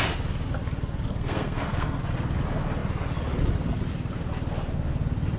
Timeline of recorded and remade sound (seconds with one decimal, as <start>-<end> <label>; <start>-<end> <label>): 0.0-1.1 recorded; 1.1-2.0 remade; 2.0-5.4 recorded